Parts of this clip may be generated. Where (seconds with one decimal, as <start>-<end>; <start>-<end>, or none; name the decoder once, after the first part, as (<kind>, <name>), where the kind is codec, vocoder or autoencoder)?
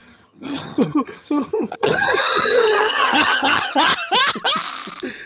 0.0-3.9 (vocoder, HiFi-GAN)